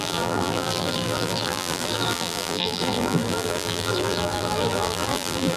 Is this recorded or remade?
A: remade